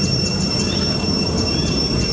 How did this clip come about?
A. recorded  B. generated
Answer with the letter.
A